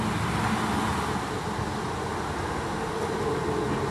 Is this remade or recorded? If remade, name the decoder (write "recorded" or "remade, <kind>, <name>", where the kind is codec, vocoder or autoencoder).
recorded